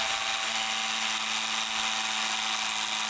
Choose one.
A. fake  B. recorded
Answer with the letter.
B